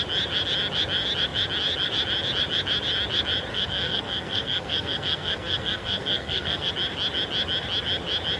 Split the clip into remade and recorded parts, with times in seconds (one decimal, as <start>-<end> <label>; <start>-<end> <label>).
0.0-3.5 recorded; 3.5-6.7 remade; 6.7-8.4 recorded